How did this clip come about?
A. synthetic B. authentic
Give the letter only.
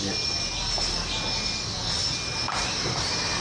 B